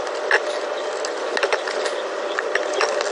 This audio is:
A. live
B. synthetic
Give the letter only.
A